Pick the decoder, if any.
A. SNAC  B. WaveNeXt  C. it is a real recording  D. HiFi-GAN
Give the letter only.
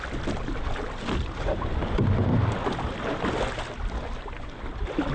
C